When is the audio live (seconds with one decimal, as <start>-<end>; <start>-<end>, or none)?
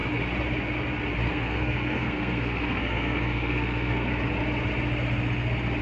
0.0-1.3; 4.1-5.8